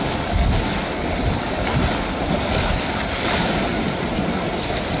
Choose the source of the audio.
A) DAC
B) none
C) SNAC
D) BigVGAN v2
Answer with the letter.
B